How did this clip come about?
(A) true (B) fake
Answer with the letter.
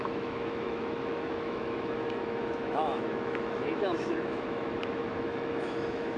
B